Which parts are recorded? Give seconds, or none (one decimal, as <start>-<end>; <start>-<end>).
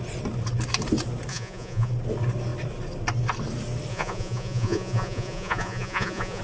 0.0-1.3; 1.9-3.9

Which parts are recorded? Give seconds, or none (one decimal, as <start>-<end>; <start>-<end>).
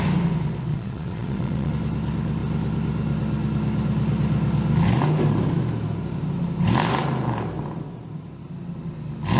0.0-0.7; 1.7-9.4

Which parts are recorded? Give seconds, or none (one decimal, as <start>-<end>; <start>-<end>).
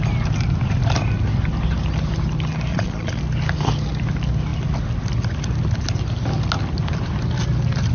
0.0-2.7; 3.2-7.9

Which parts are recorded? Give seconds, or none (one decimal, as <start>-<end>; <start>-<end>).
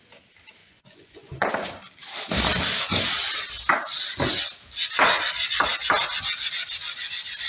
0.0-0.6; 1.5-7.5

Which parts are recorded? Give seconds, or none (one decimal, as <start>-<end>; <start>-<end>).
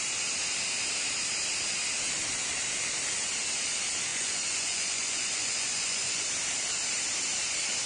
0.0-4.1; 6.2-7.9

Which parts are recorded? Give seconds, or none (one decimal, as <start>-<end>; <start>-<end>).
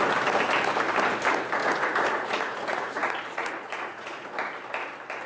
0.0-1.6; 4.3-5.3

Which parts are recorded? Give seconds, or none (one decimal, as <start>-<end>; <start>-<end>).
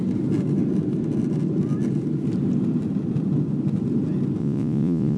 0.0-4.4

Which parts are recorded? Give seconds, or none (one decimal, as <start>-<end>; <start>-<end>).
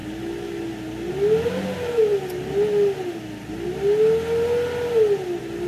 0.0-5.7